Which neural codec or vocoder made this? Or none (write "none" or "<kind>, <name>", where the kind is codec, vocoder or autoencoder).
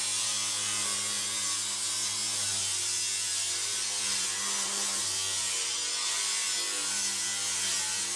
none